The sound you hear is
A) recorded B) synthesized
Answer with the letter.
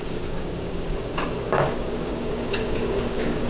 B